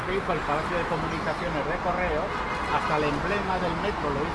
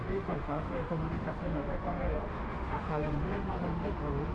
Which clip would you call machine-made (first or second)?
second